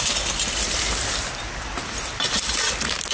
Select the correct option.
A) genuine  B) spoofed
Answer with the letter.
A